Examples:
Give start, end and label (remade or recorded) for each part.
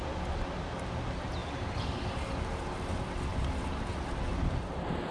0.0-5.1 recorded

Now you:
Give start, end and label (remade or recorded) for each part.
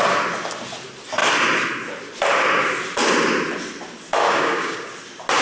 0.0-4.2 recorded; 4.2-4.9 remade; 4.9-5.4 recorded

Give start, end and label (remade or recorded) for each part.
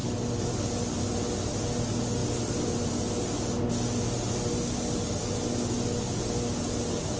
0.0-7.2 recorded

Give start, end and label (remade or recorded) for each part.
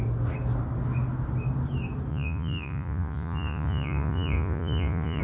0.0-2.1 recorded; 2.1-5.2 remade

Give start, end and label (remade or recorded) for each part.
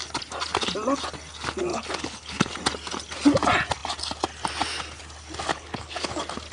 0.0-1.7 recorded; 1.7-2.5 remade; 2.5-5.5 recorded; 5.5-6.1 remade; 6.1-6.5 recorded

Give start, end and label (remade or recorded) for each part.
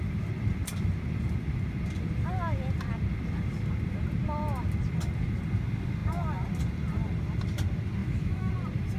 0.0-8.0 recorded; 8.0-8.5 remade; 8.5-9.0 recorded